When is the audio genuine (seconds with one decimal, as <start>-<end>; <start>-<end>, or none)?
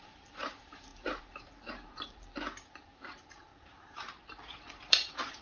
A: none